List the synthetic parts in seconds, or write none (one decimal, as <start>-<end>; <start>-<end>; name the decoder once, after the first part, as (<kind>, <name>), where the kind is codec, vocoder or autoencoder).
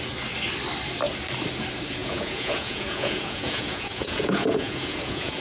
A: 2.0-5.4 (vocoder, Vocos)